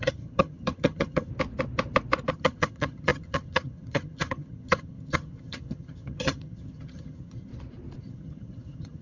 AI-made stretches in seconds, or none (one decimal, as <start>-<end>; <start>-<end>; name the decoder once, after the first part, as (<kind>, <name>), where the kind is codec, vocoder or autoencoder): 0.0-1.3 (vocoder, HiFi-GAN); 2.3-7.5; 8.0-9.0